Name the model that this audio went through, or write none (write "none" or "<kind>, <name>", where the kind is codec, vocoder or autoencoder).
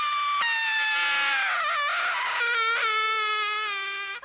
none